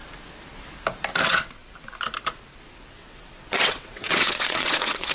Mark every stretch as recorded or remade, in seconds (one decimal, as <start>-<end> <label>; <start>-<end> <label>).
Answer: 0.0-1.2 recorded; 1.2-1.6 remade; 1.6-2.9 recorded; 2.9-5.1 remade